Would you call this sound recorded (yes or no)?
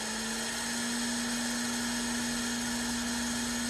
yes